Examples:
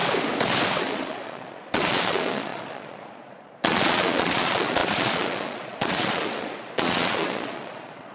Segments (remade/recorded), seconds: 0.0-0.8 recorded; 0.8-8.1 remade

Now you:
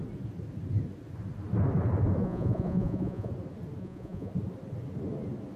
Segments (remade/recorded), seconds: 0.0-2.2 recorded; 2.2-3.3 remade; 3.3-3.8 recorded; 3.8-4.3 remade; 4.3-5.6 recorded

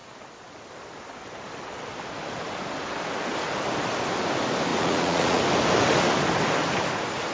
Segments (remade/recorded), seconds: 0.0-4.7 recorded; 4.7-5.4 remade; 5.4-7.3 recorded

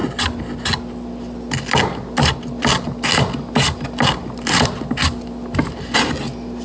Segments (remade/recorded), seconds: 0.0-6.6 recorded